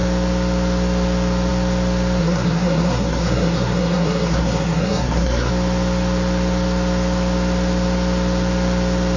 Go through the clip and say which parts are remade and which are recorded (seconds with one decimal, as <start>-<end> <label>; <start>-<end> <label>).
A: 0.0-2.2 recorded; 2.2-5.5 remade; 5.5-9.2 recorded